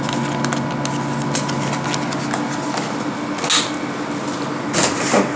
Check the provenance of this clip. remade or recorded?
recorded